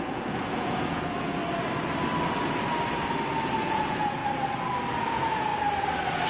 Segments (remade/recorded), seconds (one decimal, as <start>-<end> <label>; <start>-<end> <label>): 0.0-1.4 remade; 1.4-3.6 recorded; 3.6-4.2 remade; 4.2-5.0 recorded; 5.0-5.5 remade; 5.5-6.3 recorded